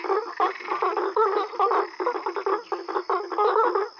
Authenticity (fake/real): real